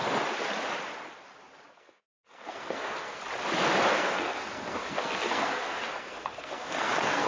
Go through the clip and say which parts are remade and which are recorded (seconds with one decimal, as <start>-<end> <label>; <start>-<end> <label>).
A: 0.0-1.7 recorded; 1.7-3.2 remade; 3.2-3.9 recorded; 3.9-7.3 remade